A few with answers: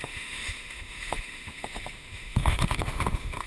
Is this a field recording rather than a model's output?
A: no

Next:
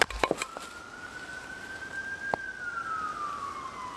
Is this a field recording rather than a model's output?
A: yes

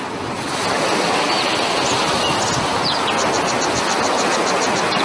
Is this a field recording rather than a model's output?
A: yes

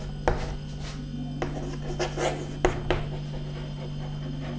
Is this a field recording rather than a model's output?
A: yes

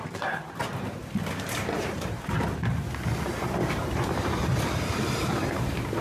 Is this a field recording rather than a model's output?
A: no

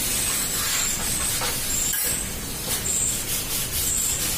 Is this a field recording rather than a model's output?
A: yes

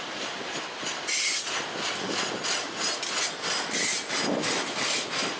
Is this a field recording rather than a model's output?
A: yes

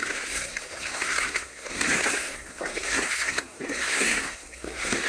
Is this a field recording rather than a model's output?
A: no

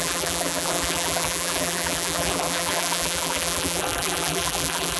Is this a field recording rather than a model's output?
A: no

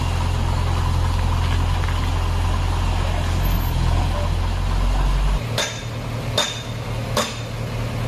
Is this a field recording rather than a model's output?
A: yes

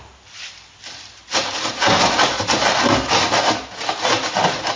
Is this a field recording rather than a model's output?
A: yes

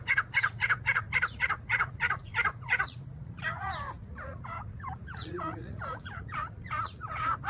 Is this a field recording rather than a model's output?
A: no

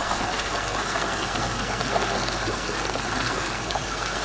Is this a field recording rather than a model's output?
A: no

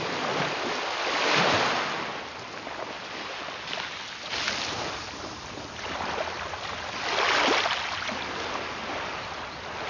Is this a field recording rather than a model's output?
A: yes